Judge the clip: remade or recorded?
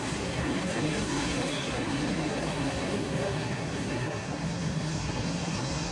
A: remade